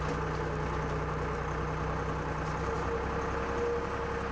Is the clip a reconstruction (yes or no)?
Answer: no